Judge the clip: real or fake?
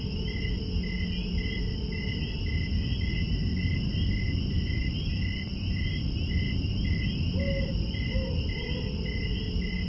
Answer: real